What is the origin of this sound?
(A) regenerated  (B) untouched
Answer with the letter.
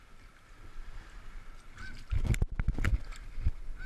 B